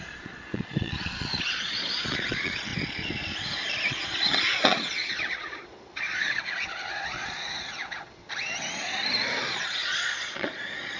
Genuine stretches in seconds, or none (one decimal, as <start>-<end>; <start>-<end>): 2.7-3.9; 8.2-9.6